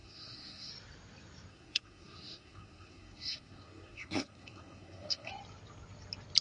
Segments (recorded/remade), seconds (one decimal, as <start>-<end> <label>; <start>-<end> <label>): 0.0-0.7 remade; 0.7-1.5 recorded; 1.5-5.3 remade; 5.3-6.4 recorded